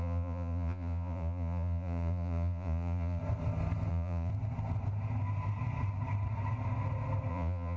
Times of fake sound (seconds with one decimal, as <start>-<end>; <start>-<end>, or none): 0.0-3.2; 3.9-4.3; 7.3-7.8

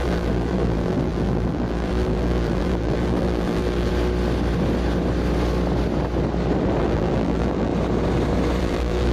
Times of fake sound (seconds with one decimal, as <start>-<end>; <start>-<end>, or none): 0.0-3.9; 6.8-7.7; 8.6-9.1

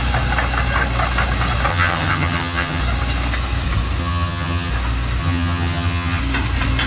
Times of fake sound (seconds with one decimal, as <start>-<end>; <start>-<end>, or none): 1.7-2.8; 4.0-4.7; 5.2-6.2

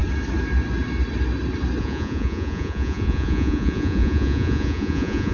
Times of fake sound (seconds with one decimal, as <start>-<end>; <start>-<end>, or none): 1.8-5.3

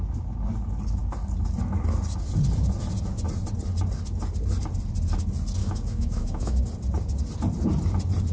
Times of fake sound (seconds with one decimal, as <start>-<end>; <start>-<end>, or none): 5.6-6.6

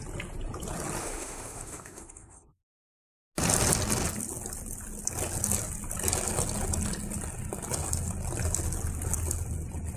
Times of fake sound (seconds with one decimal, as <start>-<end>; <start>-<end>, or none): 1.0-2.6